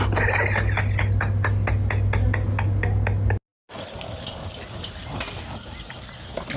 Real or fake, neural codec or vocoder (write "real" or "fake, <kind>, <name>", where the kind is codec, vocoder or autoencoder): real